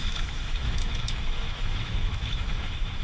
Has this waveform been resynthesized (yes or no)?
yes